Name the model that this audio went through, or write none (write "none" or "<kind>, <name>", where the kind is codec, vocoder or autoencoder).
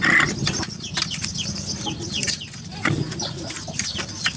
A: none